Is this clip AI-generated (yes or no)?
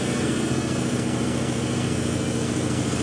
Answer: yes